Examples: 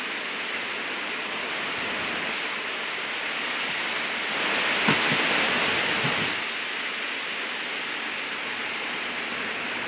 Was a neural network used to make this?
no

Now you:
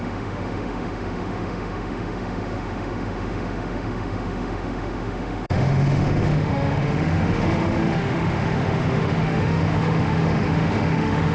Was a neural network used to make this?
yes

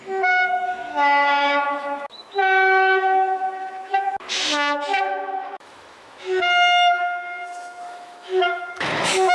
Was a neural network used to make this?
yes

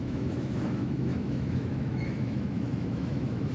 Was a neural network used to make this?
yes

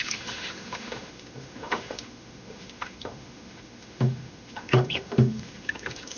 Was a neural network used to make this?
yes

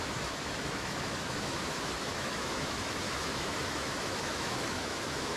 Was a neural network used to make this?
yes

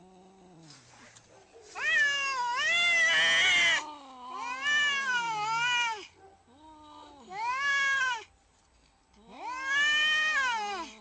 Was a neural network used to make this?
no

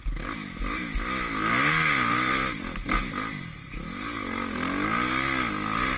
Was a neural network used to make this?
no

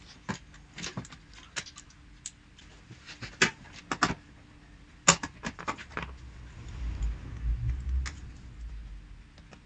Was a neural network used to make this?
no